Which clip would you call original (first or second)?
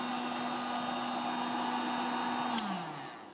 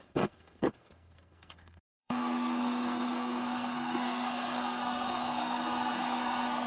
first